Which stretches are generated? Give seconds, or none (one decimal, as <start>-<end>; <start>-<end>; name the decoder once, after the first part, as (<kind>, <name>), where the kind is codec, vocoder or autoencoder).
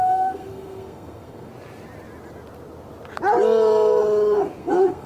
0.0-1.5 (codec, SNAC); 4.6-5.1